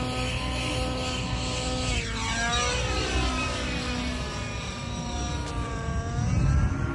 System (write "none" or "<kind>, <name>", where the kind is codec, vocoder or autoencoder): none